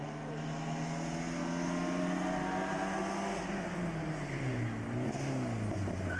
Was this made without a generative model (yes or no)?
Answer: yes